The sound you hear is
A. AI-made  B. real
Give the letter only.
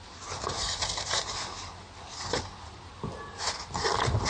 B